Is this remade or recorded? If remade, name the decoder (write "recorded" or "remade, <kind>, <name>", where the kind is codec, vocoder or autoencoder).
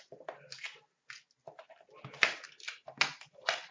recorded